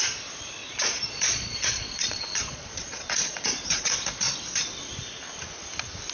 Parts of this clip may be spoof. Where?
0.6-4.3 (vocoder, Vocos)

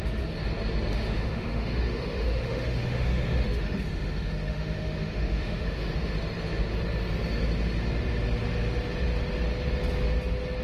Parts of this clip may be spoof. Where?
0.9-6.1 (autoencoder, DAC-VAE)

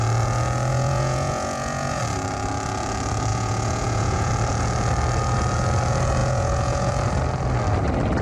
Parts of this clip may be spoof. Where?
0.7-2.0 (vocoder, Vocos); 3.3-4.3; 6.2-6.9

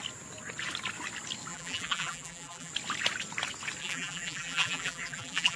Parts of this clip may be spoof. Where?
1.5-2.7 (vocoder, BigVGAN v2); 3.8-5.6

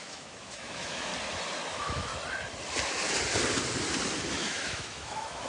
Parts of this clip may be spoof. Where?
0.0-1.1 (autoencoder, DAC-VAE); 1.7-2.1; 4.3-5.5

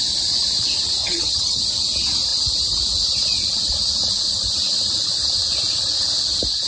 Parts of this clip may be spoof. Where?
1.0-1.6 (vocoder, HiFi-GAN)

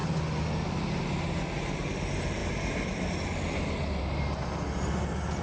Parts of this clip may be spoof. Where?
none

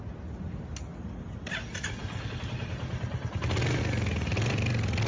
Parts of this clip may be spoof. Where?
none